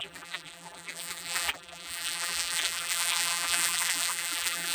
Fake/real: fake